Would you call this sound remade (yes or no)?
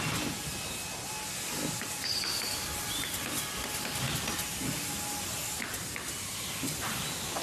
no